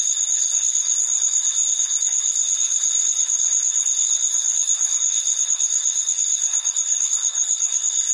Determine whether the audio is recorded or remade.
remade